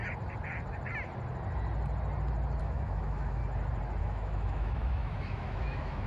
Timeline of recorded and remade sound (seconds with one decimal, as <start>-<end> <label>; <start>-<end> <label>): 0.0-2.6 recorded; 2.6-3.4 remade; 3.4-4.0 recorded; 4.0-6.1 remade